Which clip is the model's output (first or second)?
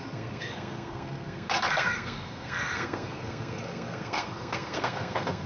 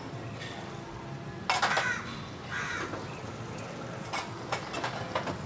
first